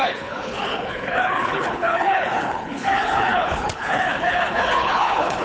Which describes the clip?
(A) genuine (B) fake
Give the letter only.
B